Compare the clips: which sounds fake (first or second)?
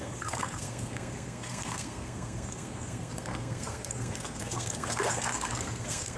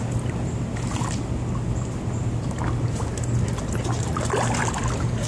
first